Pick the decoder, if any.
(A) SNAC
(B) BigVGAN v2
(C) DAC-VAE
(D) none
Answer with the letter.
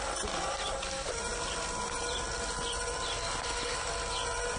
D